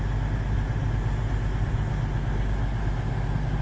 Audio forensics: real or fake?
real